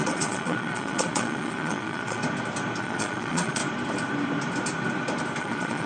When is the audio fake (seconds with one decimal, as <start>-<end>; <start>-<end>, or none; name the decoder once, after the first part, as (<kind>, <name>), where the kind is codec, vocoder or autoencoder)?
0.0-2.2 (vocoder, Vocos); 2.8-3.6; 5.4-5.9